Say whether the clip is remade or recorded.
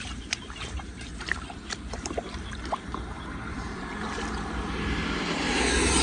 remade